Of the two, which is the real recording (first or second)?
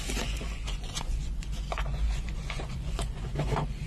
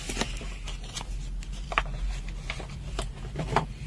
second